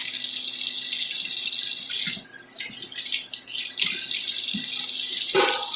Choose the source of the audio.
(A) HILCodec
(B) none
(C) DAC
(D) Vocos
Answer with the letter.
B